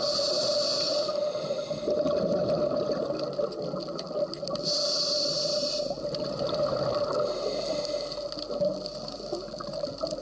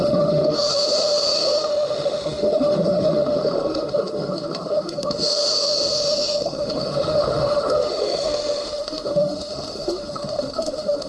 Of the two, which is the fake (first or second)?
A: second